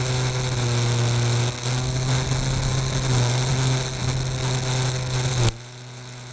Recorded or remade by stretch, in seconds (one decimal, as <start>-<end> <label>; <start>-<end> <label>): 0.0-6.3 recorded